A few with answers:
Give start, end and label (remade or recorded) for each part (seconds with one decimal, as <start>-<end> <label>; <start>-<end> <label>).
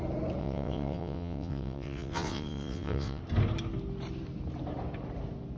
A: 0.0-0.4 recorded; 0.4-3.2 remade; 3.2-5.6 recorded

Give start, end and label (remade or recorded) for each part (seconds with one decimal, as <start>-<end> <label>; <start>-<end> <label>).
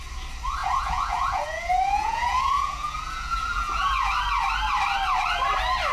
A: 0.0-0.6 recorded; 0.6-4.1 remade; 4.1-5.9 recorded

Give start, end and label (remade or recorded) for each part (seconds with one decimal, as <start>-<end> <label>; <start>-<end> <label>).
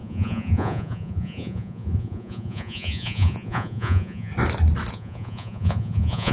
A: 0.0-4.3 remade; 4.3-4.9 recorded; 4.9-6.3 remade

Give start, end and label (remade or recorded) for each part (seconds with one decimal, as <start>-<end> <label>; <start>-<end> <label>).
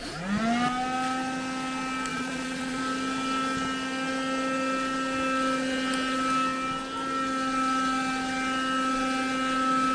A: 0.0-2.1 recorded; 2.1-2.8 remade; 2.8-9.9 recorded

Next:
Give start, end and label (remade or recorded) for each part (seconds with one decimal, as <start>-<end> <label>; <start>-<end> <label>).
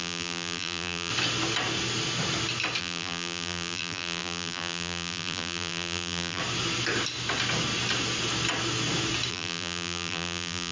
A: 0.0-1.1 remade; 1.1-2.8 recorded; 2.8-6.4 remade; 6.4-9.3 recorded; 9.3-10.7 remade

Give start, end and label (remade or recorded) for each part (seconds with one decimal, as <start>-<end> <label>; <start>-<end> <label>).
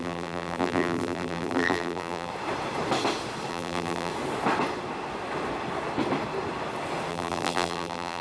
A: 0.0-2.3 remade; 2.3-3.5 recorded; 3.5-4.1 remade; 4.1-7.1 recorded; 7.1-8.2 remade